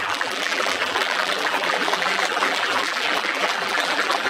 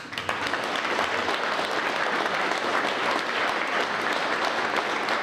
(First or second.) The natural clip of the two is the second